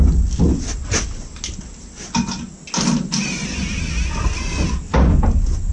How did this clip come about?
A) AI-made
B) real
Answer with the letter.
B